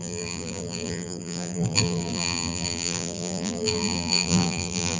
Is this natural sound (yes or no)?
no